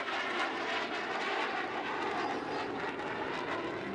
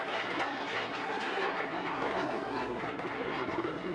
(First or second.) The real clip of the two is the first